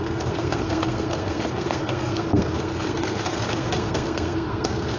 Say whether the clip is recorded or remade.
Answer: remade